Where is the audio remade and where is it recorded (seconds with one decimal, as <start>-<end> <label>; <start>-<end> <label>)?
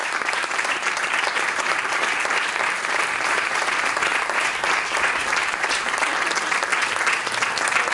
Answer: 0.0-4.6 remade; 4.6-5.4 recorded; 5.4-6.0 remade; 6.0-7.9 recorded